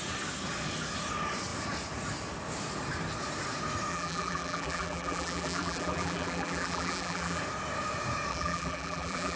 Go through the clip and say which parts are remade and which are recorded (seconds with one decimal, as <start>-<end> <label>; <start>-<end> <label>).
0.0-3.9 recorded; 3.9-7.4 remade; 7.4-8.3 recorded; 8.3-9.4 remade